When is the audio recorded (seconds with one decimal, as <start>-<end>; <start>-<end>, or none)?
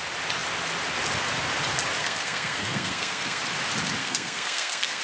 0.0-2.0; 3.4-4.0